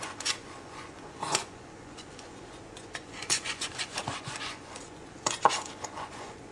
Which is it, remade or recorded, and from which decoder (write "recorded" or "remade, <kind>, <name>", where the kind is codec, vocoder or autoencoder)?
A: remade, vocoder, Vocos